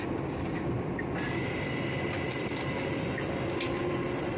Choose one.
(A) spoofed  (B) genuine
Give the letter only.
B